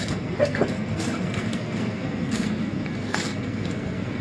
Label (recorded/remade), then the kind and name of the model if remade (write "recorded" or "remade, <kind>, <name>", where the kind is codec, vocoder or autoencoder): remade, codec, SNAC